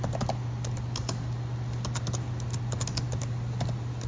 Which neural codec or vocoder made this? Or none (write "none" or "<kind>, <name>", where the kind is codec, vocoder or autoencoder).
none